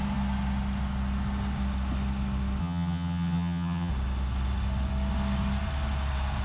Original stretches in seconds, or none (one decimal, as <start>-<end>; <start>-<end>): 0.0-2.6; 3.9-6.4